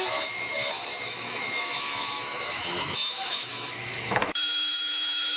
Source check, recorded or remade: remade